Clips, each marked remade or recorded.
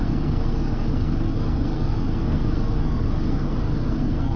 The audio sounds remade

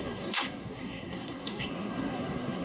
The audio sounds remade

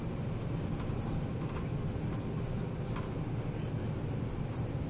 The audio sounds recorded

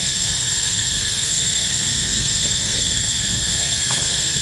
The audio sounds remade